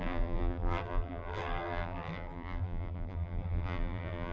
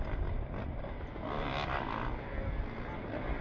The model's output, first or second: first